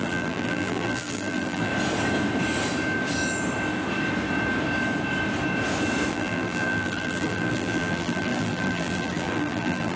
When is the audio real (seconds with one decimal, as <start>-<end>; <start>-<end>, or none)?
1.7-6.1